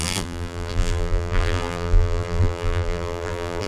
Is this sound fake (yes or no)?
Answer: yes